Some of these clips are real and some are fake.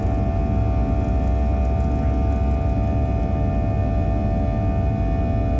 real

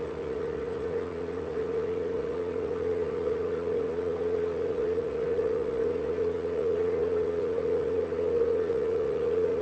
fake